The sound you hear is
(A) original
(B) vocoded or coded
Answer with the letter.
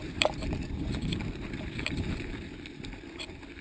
B